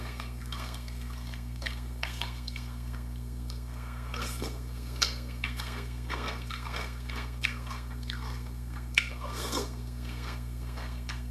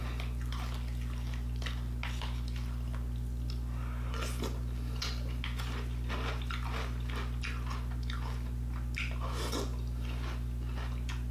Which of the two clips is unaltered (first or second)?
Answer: second